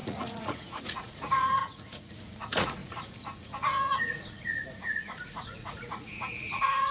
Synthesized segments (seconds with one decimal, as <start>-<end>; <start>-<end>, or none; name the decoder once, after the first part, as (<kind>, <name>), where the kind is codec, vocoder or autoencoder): 0.0-6.9 (vocoder, Vocos)